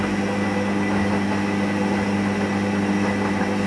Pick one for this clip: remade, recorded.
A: recorded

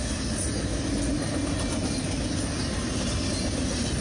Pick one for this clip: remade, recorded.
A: recorded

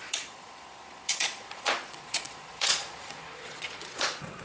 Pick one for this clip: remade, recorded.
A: remade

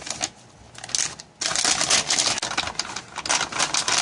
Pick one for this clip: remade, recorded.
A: recorded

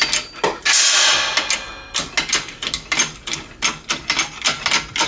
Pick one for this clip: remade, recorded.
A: recorded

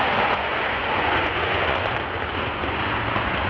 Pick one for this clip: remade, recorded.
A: remade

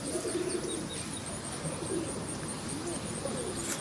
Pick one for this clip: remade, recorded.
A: recorded